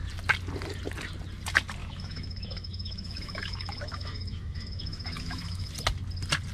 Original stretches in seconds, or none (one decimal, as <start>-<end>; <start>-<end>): 0.0-1.8; 5.7-6.5